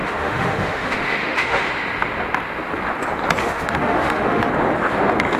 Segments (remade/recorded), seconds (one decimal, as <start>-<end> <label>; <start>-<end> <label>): 0.0-1.7 remade; 1.7-3.4 recorded; 3.4-4.5 remade; 4.5-5.4 recorded